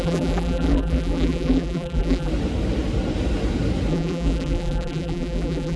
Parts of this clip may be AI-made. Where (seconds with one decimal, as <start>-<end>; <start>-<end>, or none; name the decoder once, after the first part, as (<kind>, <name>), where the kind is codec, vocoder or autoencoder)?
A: 0.0-2.3 (vocoder, BigVGAN v2); 3.9-5.8